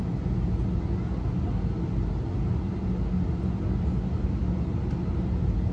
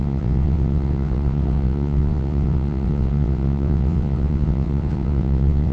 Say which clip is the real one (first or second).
first